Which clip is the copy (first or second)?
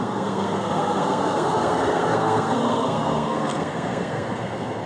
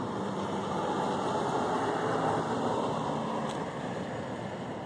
first